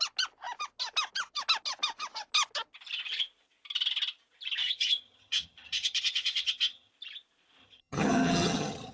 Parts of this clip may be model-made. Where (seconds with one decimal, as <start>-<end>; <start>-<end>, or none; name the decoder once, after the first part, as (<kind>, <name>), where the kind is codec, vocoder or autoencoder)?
4.6-6.9 (vocoder, HiFi-GAN); 7.6-8.9